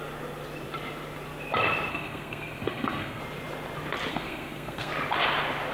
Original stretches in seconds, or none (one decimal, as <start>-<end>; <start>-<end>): 0.0-1.9; 3.2-4.1; 4.9-5.7